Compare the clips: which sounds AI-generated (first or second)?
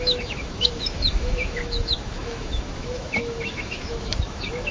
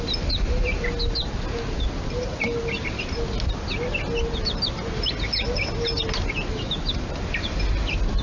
first